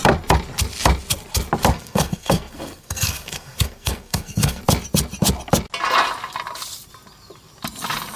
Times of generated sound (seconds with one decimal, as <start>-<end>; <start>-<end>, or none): 1.7-4.6